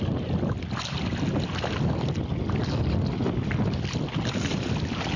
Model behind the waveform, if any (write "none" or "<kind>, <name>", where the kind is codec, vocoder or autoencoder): none